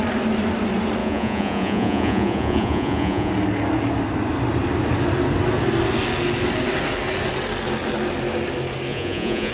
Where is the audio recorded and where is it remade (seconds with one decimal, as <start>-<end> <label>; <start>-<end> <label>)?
0.0-1.0 recorded; 1.0-3.3 remade; 3.3-8.9 recorded; 8.9-9.5 remade